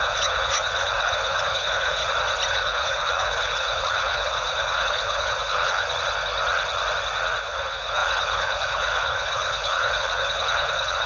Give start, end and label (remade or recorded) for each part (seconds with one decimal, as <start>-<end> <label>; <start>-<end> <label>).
0.0-2.0 remade; 2.0-2.5 recorded; 2.5-5.8 remade; 5.8-7.4 recorded; 7.4-11.1 remade